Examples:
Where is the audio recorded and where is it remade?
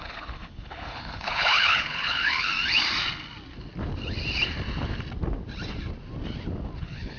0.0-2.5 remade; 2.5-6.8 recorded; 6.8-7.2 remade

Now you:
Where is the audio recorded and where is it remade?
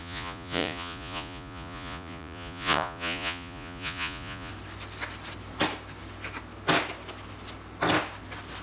0.0-4.5 remade; 4.5-8.6 recorded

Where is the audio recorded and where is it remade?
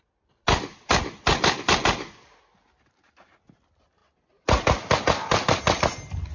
0.0-6.3 recorded